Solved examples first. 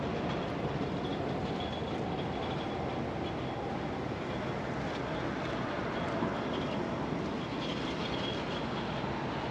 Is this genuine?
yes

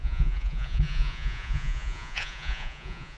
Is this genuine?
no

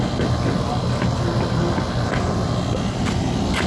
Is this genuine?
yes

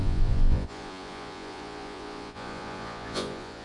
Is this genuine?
no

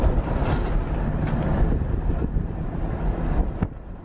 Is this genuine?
yes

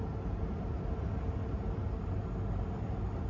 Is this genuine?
yes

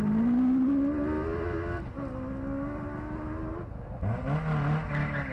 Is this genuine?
yes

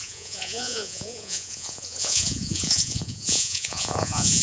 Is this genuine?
no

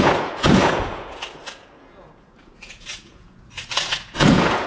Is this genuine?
no